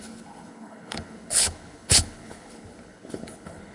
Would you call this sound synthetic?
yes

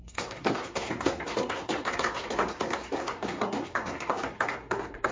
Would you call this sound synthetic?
yes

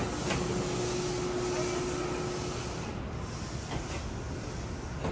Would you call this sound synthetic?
no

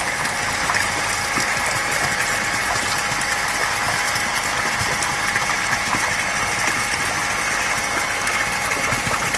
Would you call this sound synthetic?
no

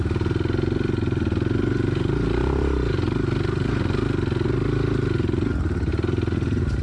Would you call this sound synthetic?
no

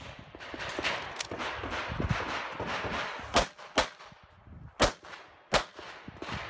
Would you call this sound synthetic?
no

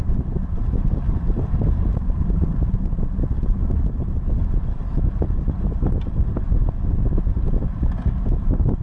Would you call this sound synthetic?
no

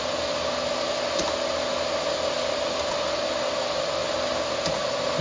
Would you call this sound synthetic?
no